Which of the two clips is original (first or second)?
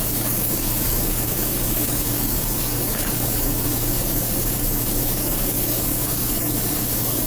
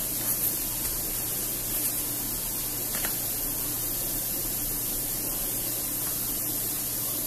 second